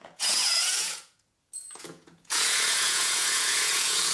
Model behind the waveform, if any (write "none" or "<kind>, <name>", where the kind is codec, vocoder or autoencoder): vocoder, Vocos